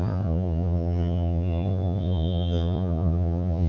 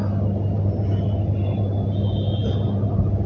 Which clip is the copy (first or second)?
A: first